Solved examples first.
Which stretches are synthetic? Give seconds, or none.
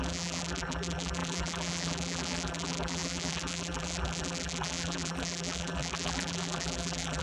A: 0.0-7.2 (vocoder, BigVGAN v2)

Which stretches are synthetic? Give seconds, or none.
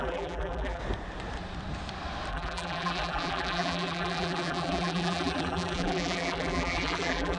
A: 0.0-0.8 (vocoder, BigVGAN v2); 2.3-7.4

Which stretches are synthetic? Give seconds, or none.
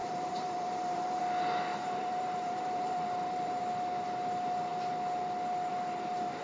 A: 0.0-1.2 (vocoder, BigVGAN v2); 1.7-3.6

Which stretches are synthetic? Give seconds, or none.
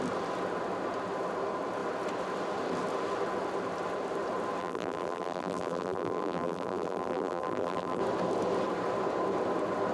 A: 4.6-8.0 (vocoder, BigVGAN v2)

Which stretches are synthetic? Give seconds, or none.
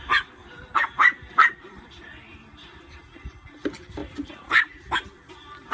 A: 0.0-0.4 (vocoder, BigVGAN v2); 1.3-5.7